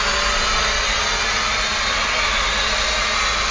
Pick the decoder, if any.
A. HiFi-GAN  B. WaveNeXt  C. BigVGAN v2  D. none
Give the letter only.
D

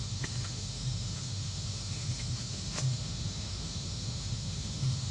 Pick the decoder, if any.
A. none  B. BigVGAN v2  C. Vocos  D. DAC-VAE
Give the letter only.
D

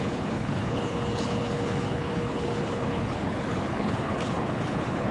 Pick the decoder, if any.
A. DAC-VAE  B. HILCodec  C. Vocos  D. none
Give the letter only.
B